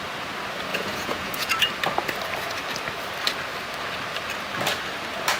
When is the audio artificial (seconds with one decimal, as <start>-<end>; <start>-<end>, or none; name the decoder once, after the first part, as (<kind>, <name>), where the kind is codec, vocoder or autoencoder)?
0.7-1.5 (vocoder, Vocos)